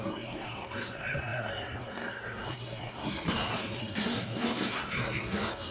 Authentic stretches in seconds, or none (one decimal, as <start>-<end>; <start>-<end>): none